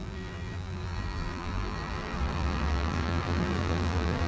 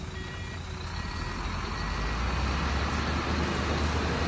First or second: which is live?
second